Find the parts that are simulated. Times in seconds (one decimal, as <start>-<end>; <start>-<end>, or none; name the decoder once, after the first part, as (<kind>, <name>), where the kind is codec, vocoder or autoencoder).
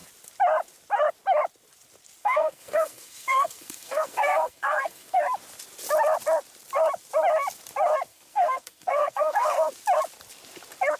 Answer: 2.2-5.2 (codec, SNAC); 8.1-9.7